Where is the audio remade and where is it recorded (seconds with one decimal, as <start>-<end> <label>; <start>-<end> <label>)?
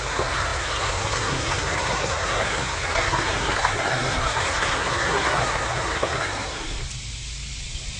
0.0-6.8 remade; 6.8-8.0 recorded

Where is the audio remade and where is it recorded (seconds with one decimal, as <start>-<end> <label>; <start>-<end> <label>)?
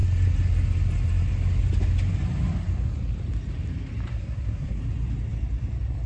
0.0-4.1 recorded; 4.1-4.8 remade; 4.8-6.1 recorded